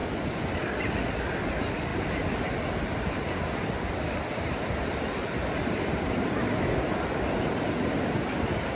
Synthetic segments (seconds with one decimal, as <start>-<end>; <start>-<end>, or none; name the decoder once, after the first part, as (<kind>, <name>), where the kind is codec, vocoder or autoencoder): 0.0-0.5 (vocoder, Vocos)